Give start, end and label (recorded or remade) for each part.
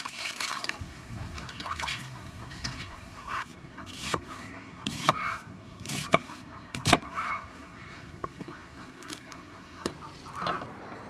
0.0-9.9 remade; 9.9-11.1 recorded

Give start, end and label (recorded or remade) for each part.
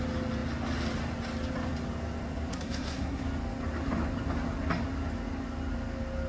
0.0-2.5 recorded; 2.5-3.2 remade; 3.2-6.3 recorded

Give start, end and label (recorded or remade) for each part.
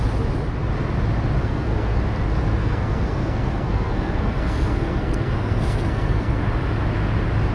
0.0-1.4 recorded; 1.4-2.0 remade; 2.0-2.6 recorded; 2.6-6.4 remade; 6.4-7.5 recorded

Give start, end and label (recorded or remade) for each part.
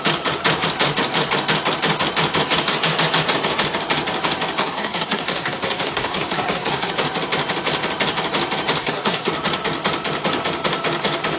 0.0-4.6 recorded; 4.6-6.9 remade; 6.9-8.8 recorded; 8.8-9.3 remade; 9.3-11.4 recorded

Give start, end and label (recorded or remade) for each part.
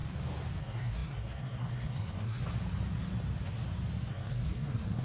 0.0-0.6 recorded; 0.6-2.4 remade; 2.4-4.1 recorded; 4.1-5.0 remade